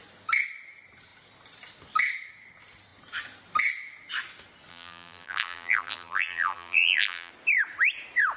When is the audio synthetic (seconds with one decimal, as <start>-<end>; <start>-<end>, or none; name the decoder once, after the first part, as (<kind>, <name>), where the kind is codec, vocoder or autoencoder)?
4.7-7.3 (vocoder, BigVGAN v2)